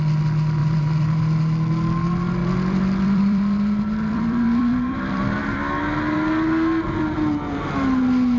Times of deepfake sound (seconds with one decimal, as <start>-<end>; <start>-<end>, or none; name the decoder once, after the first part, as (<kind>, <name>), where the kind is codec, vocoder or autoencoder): 0.6-1.2 (vocoder, BigVGAN v2); 2.4-5.6

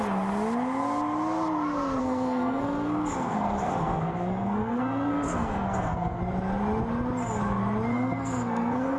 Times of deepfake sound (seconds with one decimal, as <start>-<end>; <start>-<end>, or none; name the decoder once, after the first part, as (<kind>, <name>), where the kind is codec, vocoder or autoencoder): 2.0-6.2 (codec, SNAC); 7.9-9.0

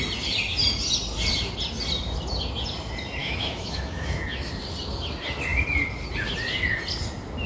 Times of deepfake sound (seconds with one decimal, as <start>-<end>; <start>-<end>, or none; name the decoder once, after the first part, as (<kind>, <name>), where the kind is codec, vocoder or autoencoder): 3.2-4.5 (autoencoder, DAC-VAE)

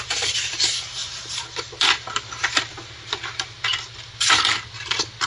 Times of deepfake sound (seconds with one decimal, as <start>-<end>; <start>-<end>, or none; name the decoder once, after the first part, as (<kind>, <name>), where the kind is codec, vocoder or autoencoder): none

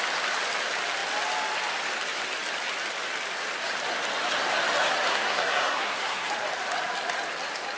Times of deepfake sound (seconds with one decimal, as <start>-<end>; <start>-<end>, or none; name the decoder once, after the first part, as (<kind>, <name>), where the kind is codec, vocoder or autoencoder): 5.1-6.3 (codec, SNAC)

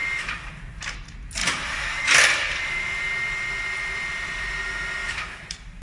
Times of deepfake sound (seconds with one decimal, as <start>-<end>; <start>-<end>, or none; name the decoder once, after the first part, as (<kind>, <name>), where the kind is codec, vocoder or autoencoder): 1.4-3.1 (vocoder, BigVGAN v2); 5.0-5.8

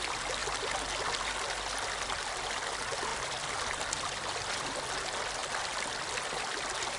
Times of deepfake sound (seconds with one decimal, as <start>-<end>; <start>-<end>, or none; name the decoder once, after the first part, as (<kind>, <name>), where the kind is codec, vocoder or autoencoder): none

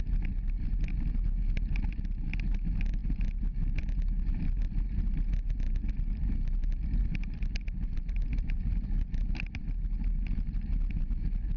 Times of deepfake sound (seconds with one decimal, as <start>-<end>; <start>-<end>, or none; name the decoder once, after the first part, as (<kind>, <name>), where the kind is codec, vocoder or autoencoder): 5.8-9.6 (vocoder, BigVGAN v2)